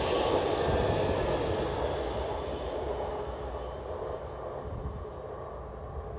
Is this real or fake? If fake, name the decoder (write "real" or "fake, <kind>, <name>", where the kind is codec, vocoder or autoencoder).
real